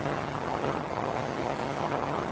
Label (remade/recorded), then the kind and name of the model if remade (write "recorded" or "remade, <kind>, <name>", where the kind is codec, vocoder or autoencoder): remade, vocoder, HiFi-GAN